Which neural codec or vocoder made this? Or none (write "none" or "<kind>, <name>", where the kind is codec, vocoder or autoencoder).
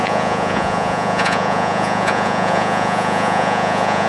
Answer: vocoder, Vocos